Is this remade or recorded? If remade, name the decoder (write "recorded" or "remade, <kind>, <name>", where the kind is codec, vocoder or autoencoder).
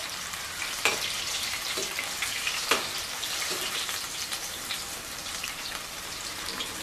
remade, vocoder, BigVGAN v2